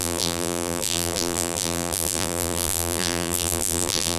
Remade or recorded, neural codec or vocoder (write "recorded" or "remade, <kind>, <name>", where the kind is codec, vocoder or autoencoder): remade, vocoder, BigVGAN v2